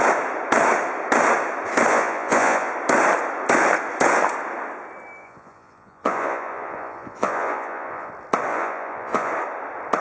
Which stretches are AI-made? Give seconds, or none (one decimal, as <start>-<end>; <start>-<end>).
1.9-2.7; 5.2-8.1; 8.5-9.3